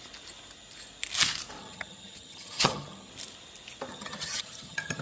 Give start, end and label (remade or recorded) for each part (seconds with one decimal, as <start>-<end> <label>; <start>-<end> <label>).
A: 0.0-1.6 recorded; 1.6-3.1 remade; 3.1-3.9 recorded; 3.9-5.0 remade